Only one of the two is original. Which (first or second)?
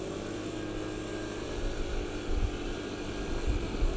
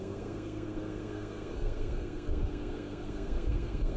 first